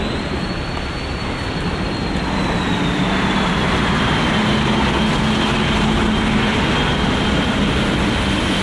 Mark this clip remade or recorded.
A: recorded